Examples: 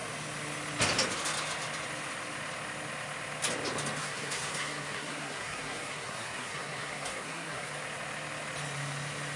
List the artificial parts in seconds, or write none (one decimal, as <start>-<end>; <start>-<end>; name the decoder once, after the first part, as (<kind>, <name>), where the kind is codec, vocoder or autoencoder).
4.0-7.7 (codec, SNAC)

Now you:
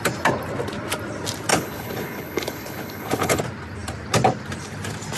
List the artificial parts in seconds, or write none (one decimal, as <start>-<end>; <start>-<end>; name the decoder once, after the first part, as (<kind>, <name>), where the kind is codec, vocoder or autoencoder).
1.5-3.4 (codec, HILCodec)

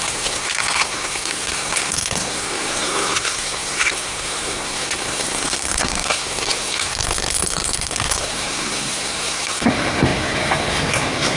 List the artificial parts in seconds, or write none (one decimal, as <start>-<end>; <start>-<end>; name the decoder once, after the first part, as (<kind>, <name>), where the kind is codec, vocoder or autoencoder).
0.0-11.4 (codec, SNAC)

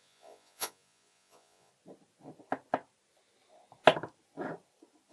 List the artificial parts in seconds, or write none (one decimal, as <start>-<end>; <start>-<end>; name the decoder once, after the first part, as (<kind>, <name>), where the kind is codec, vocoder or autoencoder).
0.0-1.7 (vocoder, Vocos)

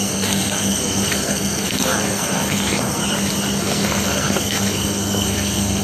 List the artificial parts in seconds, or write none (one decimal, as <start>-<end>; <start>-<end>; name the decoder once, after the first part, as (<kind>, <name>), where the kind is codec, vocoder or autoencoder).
0.0-3.0 (codec, SNAC); 3.6-5.8